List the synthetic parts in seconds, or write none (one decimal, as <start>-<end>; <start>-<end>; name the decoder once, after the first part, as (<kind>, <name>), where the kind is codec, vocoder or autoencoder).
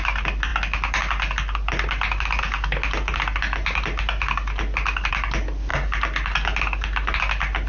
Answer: none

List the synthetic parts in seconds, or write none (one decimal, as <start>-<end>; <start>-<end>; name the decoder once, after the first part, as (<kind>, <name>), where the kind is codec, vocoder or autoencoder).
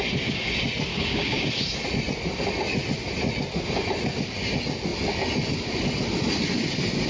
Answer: 0.9-1.5 (codec, DAC)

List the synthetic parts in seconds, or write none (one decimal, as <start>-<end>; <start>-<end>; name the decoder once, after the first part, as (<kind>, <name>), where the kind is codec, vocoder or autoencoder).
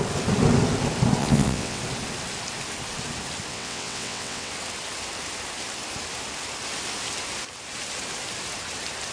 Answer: 1.2-1.8 (vocoder, WaveNeXt); 3.5-4.5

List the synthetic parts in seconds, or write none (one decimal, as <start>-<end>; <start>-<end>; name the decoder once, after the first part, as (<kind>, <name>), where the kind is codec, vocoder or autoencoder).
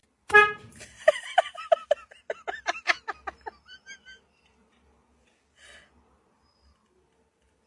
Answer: 0.7-1.7 (vocoder, BigVGAN v2)